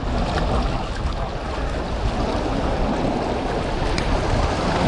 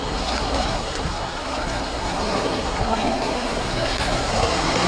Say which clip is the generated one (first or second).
second